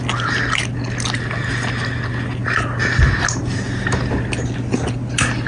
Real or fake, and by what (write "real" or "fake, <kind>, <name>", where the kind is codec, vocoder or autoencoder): real